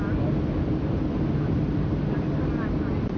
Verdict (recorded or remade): recorded